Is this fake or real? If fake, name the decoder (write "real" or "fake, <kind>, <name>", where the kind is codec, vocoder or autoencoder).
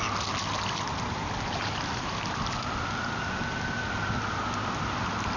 real